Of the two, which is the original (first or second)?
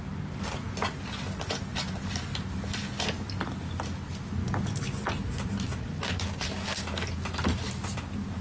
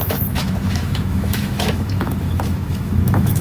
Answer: first